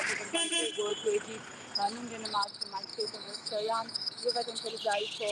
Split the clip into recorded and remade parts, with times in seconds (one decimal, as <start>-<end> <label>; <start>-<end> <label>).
0.0-2.9 recorded; 2.9-4.7 remade; 4.7-5.3 recorded